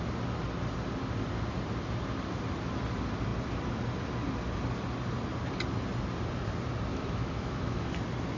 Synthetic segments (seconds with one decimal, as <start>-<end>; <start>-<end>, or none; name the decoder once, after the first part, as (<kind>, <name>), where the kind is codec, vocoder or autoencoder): 6.9-7.9 (autoencoder, DAC-VAE)